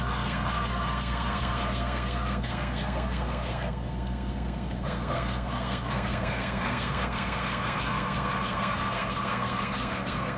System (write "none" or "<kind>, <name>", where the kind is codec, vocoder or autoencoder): codec, SNAC